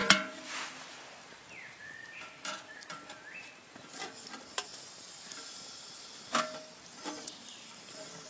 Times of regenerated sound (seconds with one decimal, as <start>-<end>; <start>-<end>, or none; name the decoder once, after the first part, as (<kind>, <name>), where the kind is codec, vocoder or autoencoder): 0.0-0.5 (vocoder, BigVGAN v2); 0.9-1.8